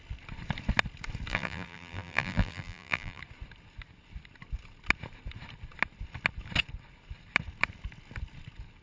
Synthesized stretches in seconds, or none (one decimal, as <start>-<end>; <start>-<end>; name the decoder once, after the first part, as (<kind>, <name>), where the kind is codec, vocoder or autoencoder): 1.3-3.2 (vocoder, BigVGAN v2)